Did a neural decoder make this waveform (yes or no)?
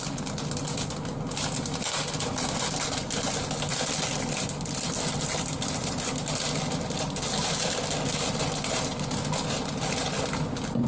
no